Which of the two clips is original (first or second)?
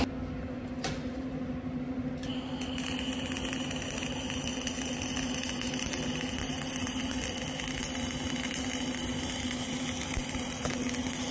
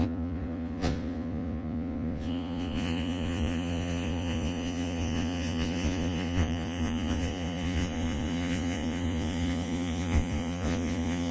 first